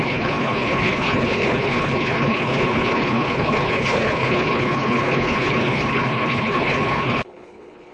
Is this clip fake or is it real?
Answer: fake